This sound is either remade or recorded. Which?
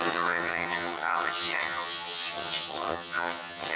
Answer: remade